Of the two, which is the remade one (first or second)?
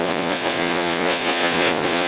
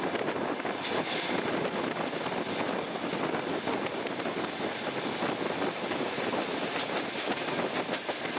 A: first